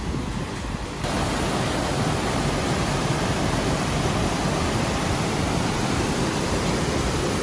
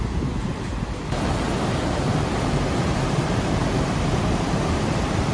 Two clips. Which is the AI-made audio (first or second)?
second